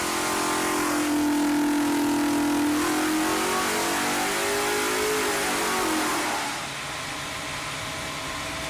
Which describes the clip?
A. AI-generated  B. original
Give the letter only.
B